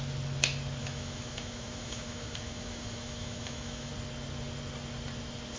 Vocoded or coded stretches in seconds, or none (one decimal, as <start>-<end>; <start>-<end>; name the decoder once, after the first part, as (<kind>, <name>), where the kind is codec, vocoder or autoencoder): 0.8-3.9 (autoencoder, DAC-VAE)